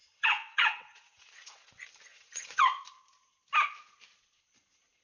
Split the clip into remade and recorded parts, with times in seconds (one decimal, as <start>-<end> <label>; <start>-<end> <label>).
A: 0.0-1.7 remade; 1.7-2.1 recorded; 2.1-2.8 remade; 2.8-5.0 recorded